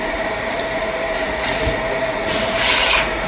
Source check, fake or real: fake